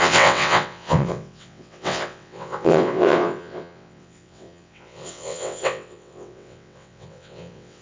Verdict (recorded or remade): remade